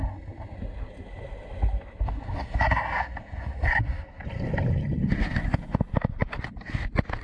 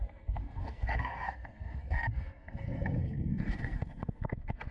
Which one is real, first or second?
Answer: first